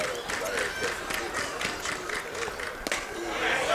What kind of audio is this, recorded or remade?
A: recorded